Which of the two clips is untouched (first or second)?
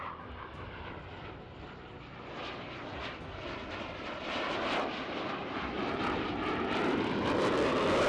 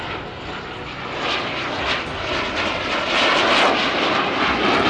second